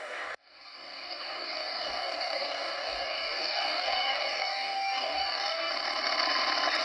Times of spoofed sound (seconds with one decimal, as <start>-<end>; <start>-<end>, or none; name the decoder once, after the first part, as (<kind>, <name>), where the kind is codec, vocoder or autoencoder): 0.0-5.7 (codec, DAC)